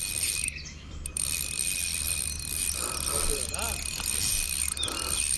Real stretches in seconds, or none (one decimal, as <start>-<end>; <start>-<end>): none